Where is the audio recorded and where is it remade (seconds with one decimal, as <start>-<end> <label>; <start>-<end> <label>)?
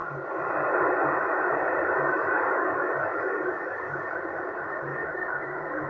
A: 0.0-0.7 remade; 0.7-2.1 recorded; 2.1-4.0 remade; 4.0-4.9 recorded; 4.9-5.9 remade